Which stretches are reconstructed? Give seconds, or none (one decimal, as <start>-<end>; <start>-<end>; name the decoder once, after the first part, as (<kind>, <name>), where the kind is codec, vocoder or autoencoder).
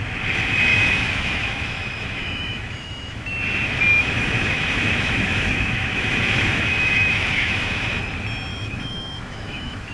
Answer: 0.7-3.3 (autoencoder, DAC-VAE); 3.9-8.0; 8.5-9.9